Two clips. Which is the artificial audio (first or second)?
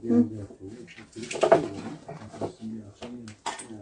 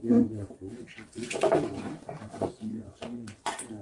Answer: second